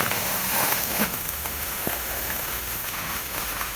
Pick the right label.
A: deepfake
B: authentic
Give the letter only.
A